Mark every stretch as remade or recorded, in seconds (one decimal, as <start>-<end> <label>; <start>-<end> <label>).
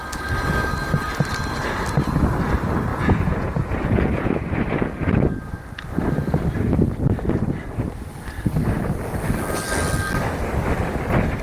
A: 0.0-2.9 recorded; 2.9-4.4 remade; 4.4-11.4 recorded